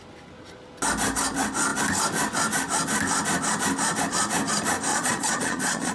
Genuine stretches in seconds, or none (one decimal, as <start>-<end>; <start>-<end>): 0.0-4.9